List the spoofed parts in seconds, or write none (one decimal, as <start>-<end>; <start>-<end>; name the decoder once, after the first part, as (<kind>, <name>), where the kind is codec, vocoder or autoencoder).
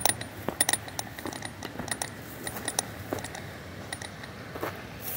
none